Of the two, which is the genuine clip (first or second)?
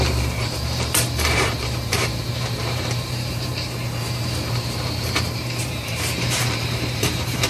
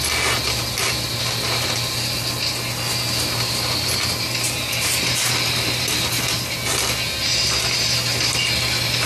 second